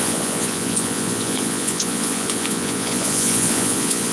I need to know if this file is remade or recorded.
remade